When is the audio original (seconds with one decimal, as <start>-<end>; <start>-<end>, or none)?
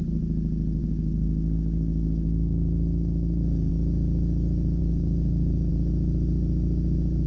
0.0-0.8; 3.7-4.8; 5.7-7.3